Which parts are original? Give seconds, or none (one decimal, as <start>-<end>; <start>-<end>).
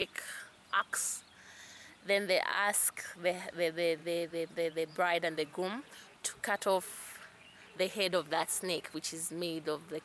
0.8-4.0; 8.8-10.0